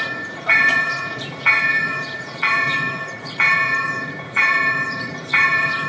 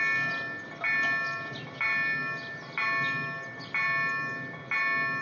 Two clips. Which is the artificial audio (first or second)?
first